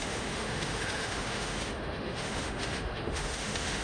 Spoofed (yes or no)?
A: yes